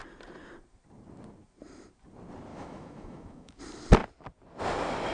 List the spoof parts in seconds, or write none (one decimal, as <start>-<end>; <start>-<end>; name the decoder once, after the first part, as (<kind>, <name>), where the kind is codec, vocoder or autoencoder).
2.5-3.6 (autoencoder, DAC-VAE)